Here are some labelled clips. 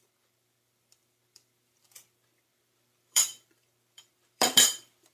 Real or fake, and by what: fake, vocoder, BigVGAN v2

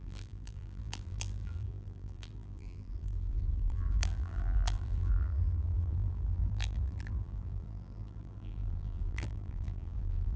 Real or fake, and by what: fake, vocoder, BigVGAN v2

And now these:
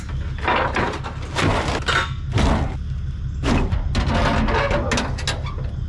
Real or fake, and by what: real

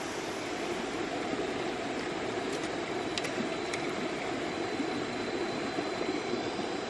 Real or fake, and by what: real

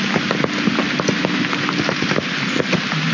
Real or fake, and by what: real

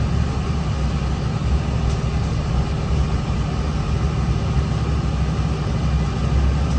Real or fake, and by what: real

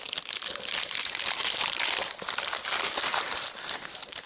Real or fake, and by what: fake, vocoder, BigVGAN v2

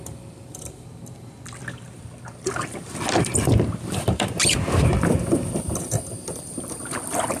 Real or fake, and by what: fake, vocoder, BigVGAN v2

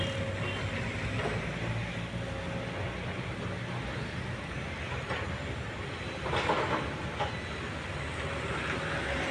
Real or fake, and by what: real